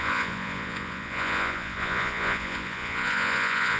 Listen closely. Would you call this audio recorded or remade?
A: remade